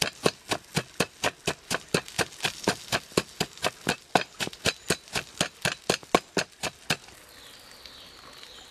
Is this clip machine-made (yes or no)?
no